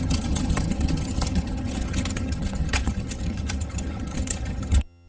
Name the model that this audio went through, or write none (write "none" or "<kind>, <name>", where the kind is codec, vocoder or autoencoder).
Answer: vocoder, HiFi-GAN